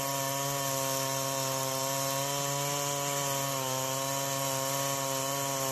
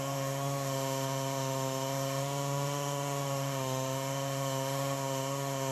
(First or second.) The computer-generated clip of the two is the second